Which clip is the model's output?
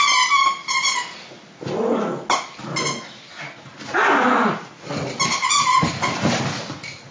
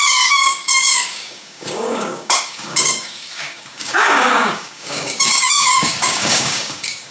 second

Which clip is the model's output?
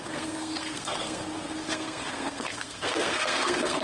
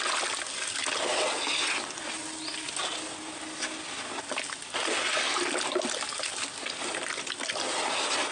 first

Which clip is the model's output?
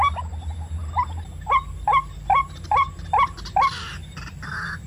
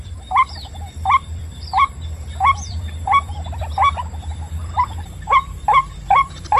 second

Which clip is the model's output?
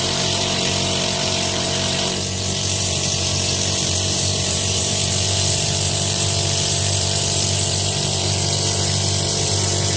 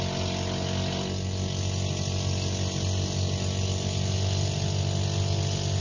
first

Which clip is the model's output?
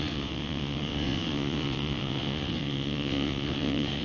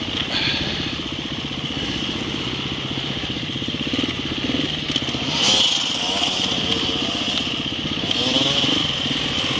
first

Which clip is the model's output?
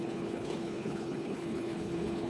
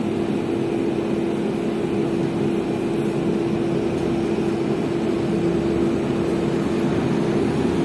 first